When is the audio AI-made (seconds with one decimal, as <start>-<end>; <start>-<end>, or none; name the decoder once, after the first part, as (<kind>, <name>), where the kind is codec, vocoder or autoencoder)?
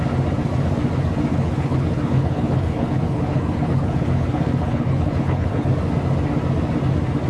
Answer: 1.3-5.7 (codec, HILCodec)